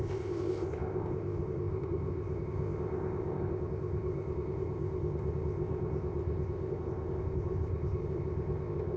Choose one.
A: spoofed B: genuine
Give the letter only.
A